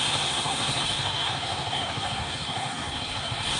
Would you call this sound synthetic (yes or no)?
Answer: yes